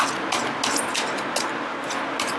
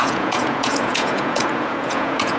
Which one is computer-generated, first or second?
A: second